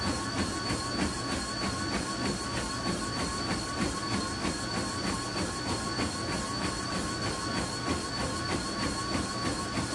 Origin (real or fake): real